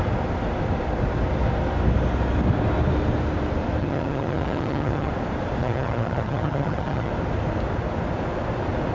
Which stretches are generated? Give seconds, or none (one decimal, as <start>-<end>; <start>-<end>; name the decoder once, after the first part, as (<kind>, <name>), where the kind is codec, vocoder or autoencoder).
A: 3.8-5.1 (vocoder, HiFi-GAN); 5.6-7.1